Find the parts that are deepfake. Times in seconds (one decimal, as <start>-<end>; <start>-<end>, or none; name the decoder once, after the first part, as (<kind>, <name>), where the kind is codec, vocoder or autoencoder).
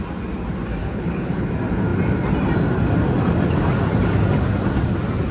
0.8-1.5 (codec, HILCodec)